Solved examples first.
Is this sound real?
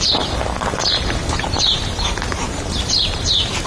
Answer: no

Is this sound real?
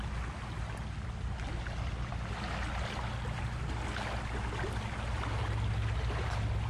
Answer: yes